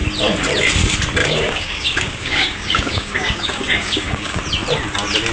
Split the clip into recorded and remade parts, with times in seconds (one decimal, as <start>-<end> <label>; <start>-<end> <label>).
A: 0.0-1.2 recorded; 1.2-4.4 remade; 4.4-5.3 recorded